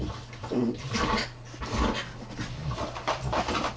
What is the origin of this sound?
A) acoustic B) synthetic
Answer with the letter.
A